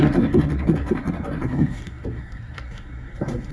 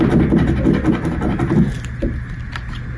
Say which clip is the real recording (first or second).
second